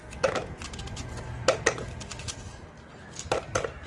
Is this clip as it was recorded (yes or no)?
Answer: yes